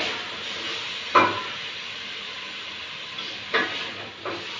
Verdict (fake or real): real